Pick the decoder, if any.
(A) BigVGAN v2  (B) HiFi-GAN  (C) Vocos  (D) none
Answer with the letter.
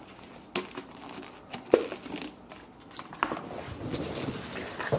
D